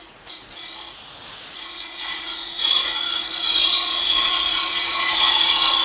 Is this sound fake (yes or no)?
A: yes